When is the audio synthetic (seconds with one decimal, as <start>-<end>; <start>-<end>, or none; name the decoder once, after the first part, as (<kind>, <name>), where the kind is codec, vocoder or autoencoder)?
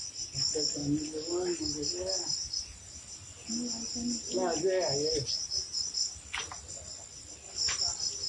none